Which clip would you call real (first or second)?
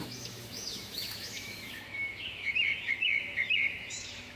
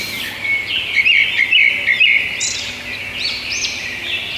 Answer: second